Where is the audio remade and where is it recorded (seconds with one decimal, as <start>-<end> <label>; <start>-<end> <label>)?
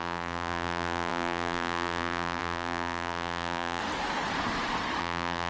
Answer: 0.0-3.8 remade; 3.8-5.0 recorded; 5.0-5.5 remade